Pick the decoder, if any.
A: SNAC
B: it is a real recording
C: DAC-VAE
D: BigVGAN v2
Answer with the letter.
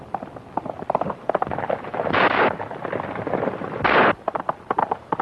B